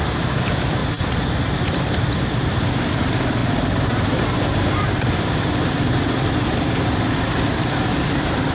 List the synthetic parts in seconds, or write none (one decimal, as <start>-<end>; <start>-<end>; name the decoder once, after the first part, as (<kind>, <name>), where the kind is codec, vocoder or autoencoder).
0.0-0.8 (vocoder, BigVGAN v2); 1.4-3.4; 4.7-8.5